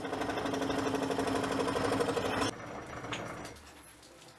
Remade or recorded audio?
recorded